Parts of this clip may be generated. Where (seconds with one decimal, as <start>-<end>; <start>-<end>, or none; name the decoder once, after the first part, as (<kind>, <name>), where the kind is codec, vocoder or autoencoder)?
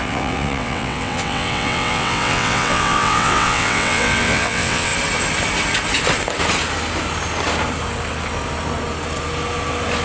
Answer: 0.0-4.9 (vocoder, WaveNeXt)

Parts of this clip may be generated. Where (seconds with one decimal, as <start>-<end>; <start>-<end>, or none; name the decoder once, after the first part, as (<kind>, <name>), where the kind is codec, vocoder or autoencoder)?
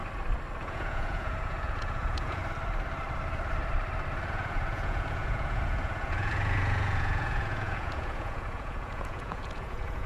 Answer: 0.6-2.4 (vocoder, Vocos); 4.3-10.1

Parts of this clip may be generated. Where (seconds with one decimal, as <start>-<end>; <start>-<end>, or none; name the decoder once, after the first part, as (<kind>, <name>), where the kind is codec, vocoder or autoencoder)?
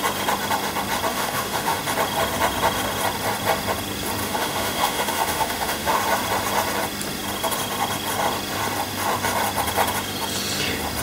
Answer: 1.1-1.8 (autoencoder, DAC-VAE); 4.2-6.0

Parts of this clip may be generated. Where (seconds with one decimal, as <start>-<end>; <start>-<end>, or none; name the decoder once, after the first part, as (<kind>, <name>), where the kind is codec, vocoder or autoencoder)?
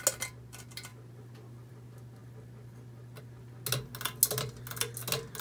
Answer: none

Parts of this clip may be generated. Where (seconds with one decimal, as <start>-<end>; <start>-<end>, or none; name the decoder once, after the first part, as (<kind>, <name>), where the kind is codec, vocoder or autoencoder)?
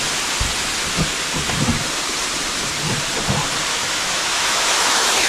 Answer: 3.7-5.3 (autoencoder, DAC-VAE)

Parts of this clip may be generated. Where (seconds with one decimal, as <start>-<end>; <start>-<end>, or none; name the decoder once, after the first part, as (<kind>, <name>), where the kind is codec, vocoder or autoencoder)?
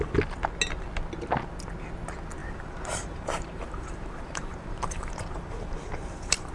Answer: 2.4-6.5 (vocoder, BigVGAN v2)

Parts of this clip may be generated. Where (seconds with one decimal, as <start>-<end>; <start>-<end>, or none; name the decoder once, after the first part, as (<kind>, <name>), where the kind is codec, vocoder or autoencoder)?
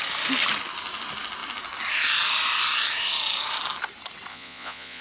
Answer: 4.3-5.0 (vocoder, Vocos)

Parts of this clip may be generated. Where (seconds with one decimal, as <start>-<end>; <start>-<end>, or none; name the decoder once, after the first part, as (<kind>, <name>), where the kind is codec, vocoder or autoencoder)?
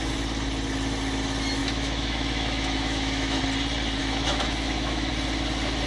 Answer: 1.6-3.4 (autoencoder, DAC-VAE); 4.0-5.1